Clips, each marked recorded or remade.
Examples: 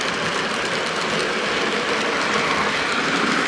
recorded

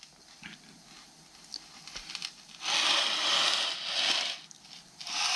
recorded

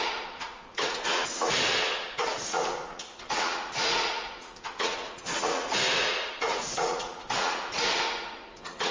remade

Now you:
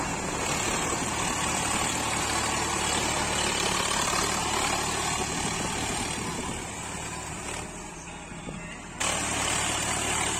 recorded